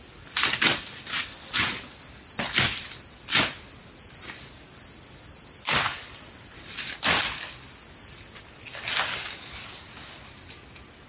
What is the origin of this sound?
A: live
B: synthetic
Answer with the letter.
A